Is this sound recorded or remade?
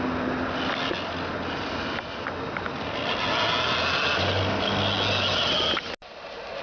recorded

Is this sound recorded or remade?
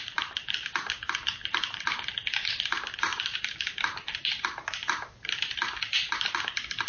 remade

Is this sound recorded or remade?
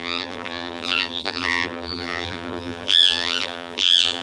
remade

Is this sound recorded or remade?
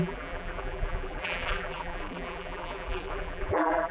remade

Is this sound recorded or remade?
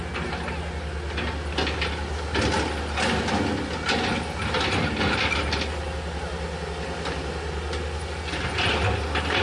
recorded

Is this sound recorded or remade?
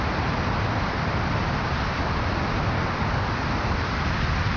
remade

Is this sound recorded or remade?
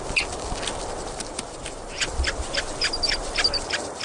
remade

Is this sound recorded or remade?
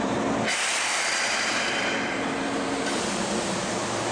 remade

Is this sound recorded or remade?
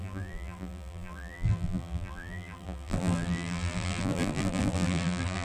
remade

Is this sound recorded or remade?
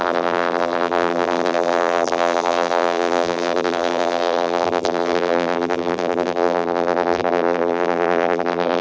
remade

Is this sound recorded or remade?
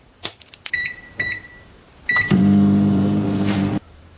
remade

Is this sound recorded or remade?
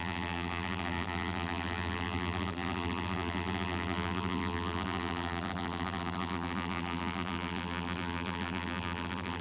remade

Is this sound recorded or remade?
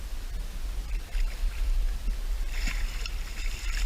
remade